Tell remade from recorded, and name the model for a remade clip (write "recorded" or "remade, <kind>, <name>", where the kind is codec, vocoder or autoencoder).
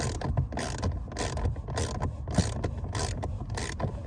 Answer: recorded